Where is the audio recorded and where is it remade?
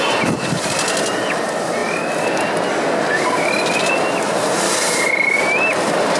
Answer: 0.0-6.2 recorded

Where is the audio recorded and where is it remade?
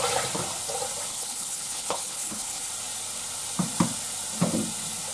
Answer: 0.0-1.1 recorded; 1.1-2.7 remade; 2.7-5.1 recorded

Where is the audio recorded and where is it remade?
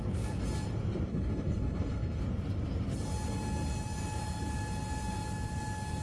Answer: 0.0-1.1 recorded; 1.1-2.2 remade; 2.2-6.0 recorded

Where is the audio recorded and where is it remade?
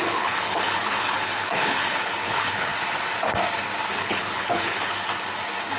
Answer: 0.0-2.7 remade; 2.7-3.9 recorded; 3.9-4.9 remade; 4.9-5.8 recorded